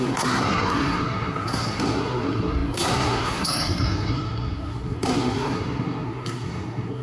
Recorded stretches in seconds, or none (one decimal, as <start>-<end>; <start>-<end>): none